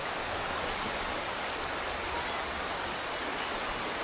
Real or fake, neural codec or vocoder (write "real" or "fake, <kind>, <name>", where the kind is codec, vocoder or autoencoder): real